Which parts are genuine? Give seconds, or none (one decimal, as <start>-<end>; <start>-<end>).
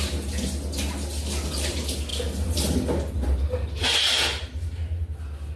0.0-5.6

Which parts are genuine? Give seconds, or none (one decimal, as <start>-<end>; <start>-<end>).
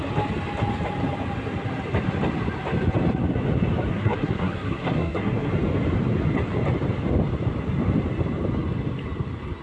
0.0-3.9; 5.5-9.6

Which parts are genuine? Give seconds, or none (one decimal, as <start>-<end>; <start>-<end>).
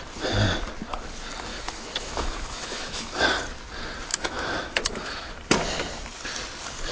0.0-1.5; 3.2-4.1; 5.3-6.9